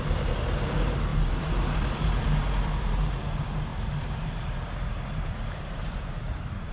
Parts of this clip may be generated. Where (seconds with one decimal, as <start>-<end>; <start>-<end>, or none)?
0.0-6.7